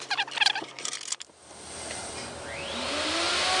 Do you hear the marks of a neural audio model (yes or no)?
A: no